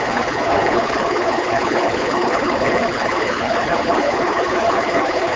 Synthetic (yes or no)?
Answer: yes